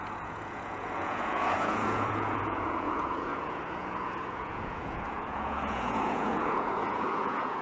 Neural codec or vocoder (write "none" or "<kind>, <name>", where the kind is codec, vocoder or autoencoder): vocoder, Vocos